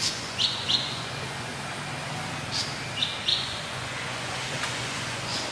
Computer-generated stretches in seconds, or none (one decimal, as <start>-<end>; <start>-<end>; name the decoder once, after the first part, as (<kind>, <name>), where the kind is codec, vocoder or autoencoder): 0.0-1.5 (vocoder, Vocos); 3.2-5.5